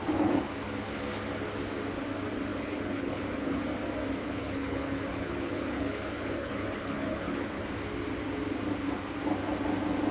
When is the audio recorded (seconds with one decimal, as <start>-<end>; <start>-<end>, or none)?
0.5-2.5; 3.6-4.2; 7.6-10.1